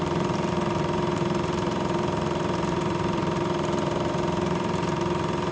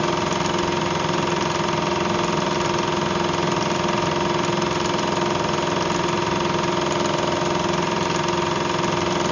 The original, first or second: second